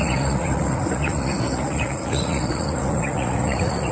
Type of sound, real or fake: fake